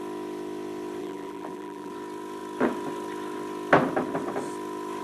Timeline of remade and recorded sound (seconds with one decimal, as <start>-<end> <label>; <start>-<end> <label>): 0.0-1.0 recorded; 1.0-1.9 remade; 1.9-5.0 recorded